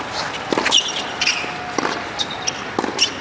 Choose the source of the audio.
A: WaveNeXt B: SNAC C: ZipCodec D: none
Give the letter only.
D